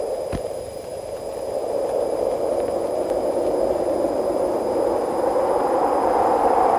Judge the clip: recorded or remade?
remade